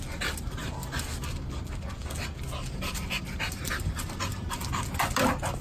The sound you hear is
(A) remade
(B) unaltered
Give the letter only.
B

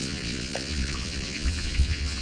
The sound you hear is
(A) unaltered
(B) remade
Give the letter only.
B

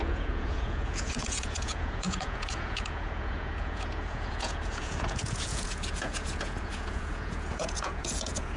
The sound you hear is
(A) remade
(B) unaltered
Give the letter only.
A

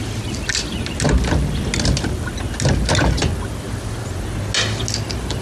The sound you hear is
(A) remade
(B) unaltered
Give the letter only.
B